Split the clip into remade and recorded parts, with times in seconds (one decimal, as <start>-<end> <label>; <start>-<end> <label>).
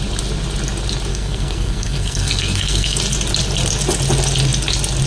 0.0-1.1 recorded; 1.1-3.0 remade; 3.0-5.1 recorded